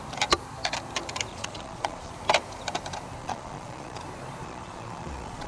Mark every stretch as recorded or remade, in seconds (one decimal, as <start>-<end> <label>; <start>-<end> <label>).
0.0-1.3 recorded; 1.3-2.1 remade; 2.1-3.2 recorded; 3.2-4.0 remade; 4.0-4.4 recorded; 4.4-5.5 remade

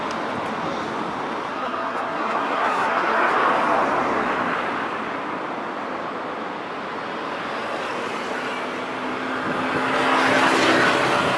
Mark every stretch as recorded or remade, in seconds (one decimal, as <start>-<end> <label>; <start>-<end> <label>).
0.0-1.5 recorded; 1.5-3.3 remade; 3.3-11.4 recorded

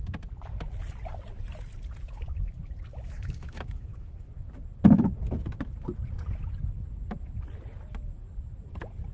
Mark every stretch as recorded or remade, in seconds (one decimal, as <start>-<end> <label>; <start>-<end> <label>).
0.0-2.9 recorded; 2.9-4.3 remade; 4.3-9.1 recorded